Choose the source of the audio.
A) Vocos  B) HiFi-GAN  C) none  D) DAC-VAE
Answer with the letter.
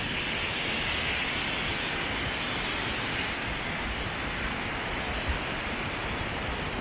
C